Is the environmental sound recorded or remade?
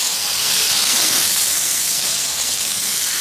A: remade